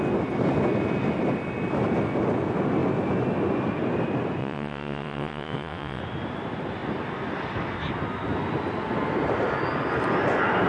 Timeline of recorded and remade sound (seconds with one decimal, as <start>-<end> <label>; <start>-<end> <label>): 0.0-4.4 recorded; 4.4-6.0 remade; 6.0-10.7 recorded